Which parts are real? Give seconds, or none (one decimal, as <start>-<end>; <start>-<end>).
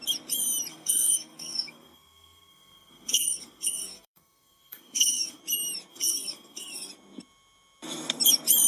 0.0-0.7; 5.4-5.9; 6.9-8.7